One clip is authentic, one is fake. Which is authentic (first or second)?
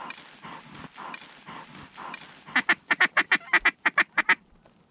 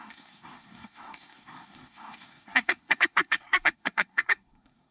first